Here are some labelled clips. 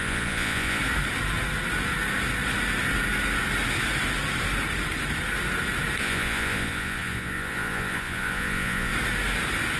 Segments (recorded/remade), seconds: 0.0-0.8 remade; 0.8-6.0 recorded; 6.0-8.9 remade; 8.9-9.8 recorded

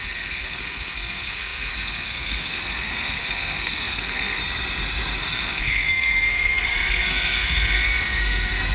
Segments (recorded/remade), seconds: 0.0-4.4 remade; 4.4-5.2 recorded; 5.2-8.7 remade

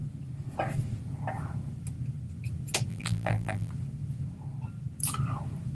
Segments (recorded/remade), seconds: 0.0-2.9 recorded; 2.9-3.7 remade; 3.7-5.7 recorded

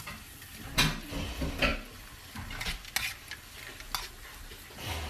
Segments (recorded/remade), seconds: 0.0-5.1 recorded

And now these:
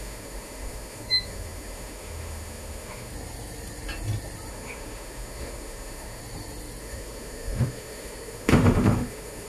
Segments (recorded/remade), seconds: 0.0-3.1 remade; 3.1-4.5 recorded; 4.5-6.2 remade; 6.2-6.8 recorded; 6.8-9.5 remade

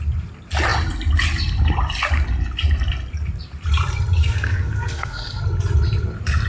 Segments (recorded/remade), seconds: 0.0-4.2 recorded; 4.2-5.4 remade; 5.4-6.5 recorded

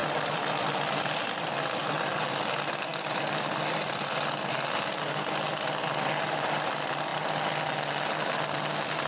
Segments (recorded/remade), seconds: 0.0-2.4 remade; 2.4-2.9 recorded; 2.9-3.8 remade; 3.8-9.1 recorded